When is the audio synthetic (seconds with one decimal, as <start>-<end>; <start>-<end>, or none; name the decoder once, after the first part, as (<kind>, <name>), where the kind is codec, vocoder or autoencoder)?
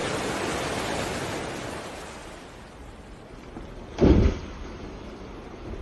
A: 0.0-1.5 (vocoder, BigVGAN v2); 2.2-4.5